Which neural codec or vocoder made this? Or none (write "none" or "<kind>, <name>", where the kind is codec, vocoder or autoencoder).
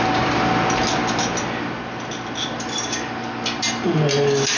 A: none